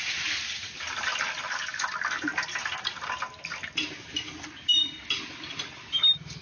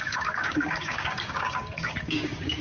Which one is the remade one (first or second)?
second